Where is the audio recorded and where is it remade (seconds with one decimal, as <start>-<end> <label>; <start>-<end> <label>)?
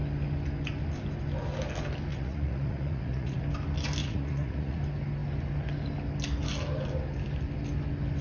0.0-2.1 recorded; 2.1-3.4 remade; 3.4-4.0 recorded; 4.0-4.8 remade; 4.8-8.2 recorded